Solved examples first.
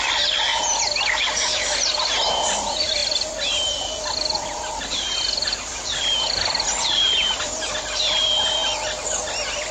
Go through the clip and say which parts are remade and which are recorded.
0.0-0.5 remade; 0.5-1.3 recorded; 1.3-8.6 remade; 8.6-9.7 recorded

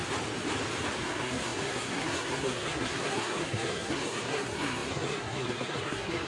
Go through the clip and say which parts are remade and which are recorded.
0.0-1.0 recorded; 1.0-6.3 remade